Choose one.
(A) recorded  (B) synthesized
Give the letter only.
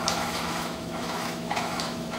B